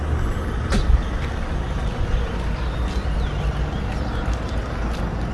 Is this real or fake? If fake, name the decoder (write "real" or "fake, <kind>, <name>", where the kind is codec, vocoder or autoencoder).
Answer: real